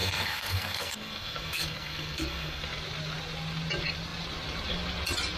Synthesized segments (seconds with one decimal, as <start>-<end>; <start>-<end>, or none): 0.0-2.6